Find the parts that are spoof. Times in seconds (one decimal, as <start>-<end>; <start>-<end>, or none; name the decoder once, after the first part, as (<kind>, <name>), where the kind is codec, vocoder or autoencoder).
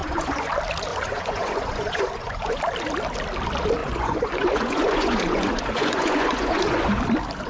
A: 0.0-0.5 (vocoder, Vocos); 0.9-2.6; 3.8-7.0